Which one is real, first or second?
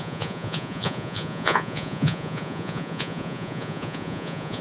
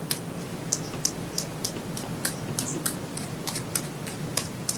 second